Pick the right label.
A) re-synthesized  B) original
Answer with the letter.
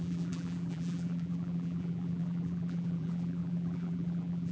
A